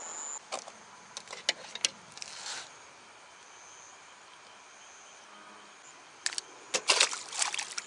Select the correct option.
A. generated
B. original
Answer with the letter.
B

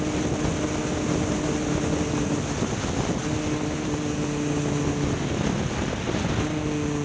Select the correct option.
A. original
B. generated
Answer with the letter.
A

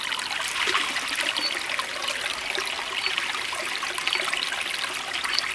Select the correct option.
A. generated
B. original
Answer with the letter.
B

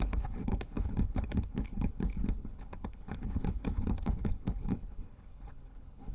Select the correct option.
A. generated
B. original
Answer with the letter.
A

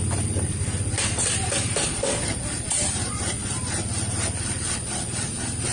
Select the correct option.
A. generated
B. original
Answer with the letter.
B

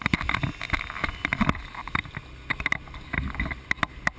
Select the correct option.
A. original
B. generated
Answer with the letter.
A